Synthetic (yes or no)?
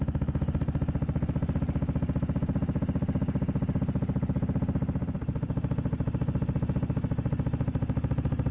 no